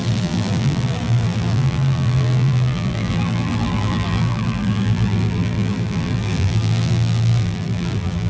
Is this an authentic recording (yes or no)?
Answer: no